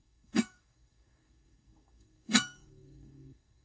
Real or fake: fake